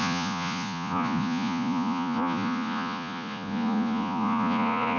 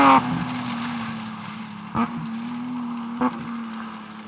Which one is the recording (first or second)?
second